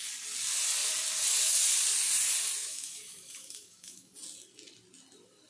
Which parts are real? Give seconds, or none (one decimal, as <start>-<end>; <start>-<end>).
0.0-2.6; 4.1-5.5